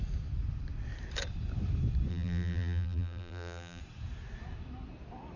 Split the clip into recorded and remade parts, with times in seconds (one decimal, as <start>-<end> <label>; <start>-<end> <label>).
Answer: 0.0-2.1 recorded; 2.1-3.8 remade; 3.8-5.4 recorded